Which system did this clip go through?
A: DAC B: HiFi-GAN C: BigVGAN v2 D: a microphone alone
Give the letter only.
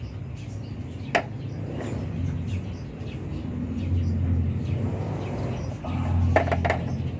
D